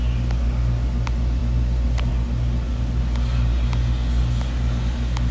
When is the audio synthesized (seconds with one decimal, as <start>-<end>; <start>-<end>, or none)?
none

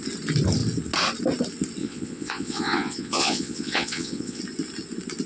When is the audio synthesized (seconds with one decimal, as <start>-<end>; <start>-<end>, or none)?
1.8-4.4

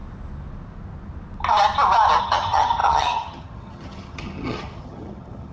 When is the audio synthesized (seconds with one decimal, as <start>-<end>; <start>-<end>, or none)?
2.2-5.5